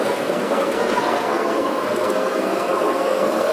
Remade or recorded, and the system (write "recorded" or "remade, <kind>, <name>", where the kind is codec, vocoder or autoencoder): remade, codec, SNAC